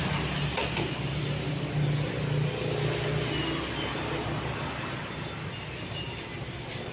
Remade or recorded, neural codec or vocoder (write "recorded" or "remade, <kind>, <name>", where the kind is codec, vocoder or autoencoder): recorded